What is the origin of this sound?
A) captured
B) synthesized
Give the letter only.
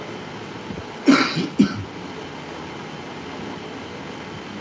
A